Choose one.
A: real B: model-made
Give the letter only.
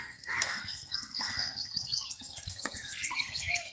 B